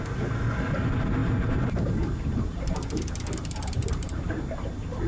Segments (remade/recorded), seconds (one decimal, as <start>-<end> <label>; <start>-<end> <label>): 0.0-1.2 recorded; 1.2-4.3 remade; 4.3-5.1 recorded